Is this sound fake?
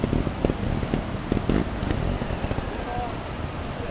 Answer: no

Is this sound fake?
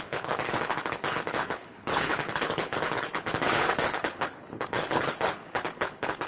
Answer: yes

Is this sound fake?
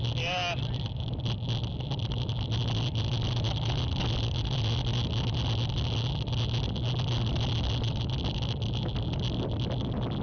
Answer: no